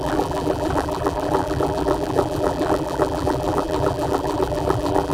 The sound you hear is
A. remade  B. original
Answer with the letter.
A